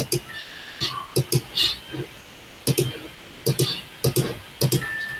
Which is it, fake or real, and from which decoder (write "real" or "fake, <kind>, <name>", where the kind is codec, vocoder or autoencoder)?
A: real